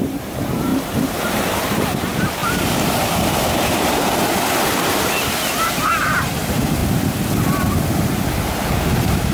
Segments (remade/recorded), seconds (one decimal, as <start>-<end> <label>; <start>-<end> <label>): 0.0-6.8 remade; 6.8-8.7 recorded; 8.7-9.3 remade